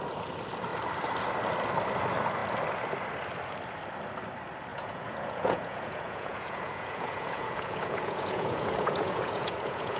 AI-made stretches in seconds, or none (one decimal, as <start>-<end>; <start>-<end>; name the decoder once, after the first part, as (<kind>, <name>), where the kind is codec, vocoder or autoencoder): 4.7-10.0 (vocoder, Vocos)